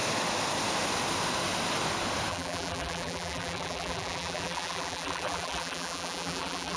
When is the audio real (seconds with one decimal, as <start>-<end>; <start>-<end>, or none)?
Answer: 0.0-2.3